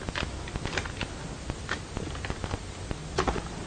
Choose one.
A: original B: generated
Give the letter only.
A